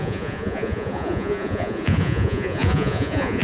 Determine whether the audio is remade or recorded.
remade